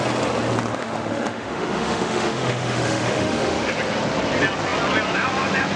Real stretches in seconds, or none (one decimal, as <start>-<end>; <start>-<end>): 0.0-0.7; 3.7-5.8